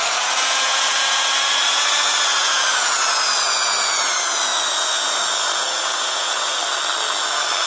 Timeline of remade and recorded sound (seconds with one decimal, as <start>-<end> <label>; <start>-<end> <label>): 0.0-6.6 remade; 6.6-7.7 recorded

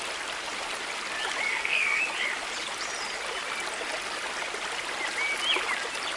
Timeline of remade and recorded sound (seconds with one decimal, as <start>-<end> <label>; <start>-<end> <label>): 0.0-1.5 recorded; 1.5-2.0 remade; 2.0-6.2 recorded

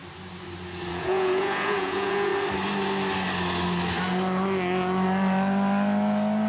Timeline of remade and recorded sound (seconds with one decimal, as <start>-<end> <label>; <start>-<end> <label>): 0.0-0.9 recorded; 0.9-2.3 remade; 2.3-6.5 recorded

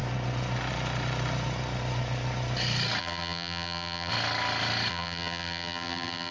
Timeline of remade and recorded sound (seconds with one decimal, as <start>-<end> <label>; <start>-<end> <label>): 0.0-3.0 recorded; 3.0-4.1 remade; 4.1-4.9 recorded; 4.9-6.3 remade